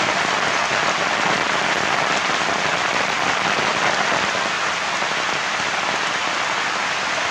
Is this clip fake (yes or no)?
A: no